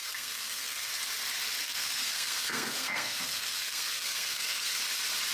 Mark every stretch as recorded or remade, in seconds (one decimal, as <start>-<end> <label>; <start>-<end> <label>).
0.0-0.9 remade; 0.9-1.6 recorded; 1.6-4.8 remade; 4.8-5.3 recorded

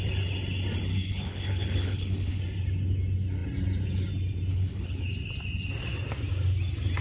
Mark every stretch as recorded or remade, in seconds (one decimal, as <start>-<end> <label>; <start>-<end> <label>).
0.0-0.9 recorded; 0.9-2.4 remade; 2.4-4.5 recorded; 4.5-5.0 remade; 5.0-7.0 recorded